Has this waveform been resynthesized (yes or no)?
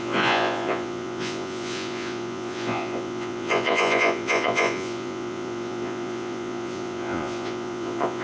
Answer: yes